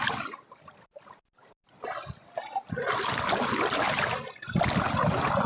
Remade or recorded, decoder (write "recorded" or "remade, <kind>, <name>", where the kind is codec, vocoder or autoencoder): recorded